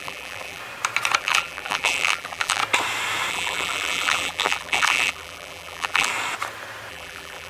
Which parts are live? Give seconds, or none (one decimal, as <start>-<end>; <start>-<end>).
0.6-1.2; 2.6-3.3; 6.1-6.9